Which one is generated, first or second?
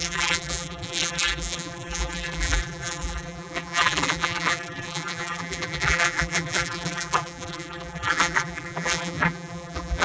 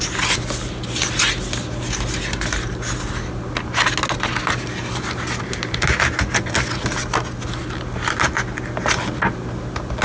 first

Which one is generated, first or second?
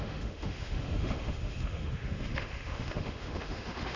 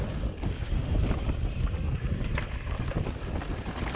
first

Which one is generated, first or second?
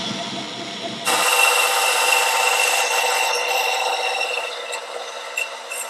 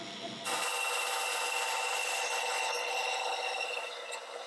first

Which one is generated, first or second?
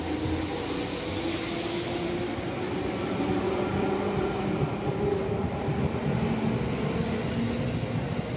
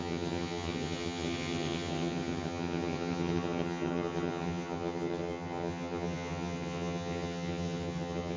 second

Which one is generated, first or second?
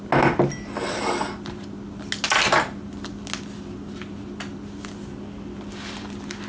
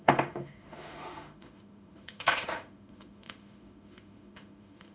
second